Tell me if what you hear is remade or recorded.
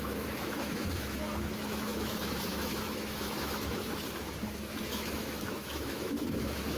remade